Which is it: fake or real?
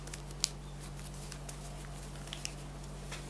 real